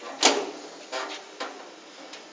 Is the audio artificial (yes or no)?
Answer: no